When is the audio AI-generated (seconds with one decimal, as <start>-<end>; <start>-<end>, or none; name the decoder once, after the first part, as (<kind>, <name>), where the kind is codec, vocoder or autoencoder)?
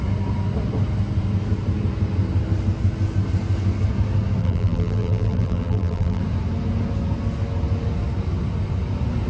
4.4-6.2 (vocoder, BigVGAN v2)